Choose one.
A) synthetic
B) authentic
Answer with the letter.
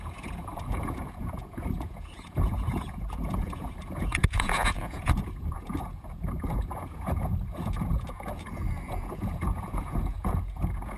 A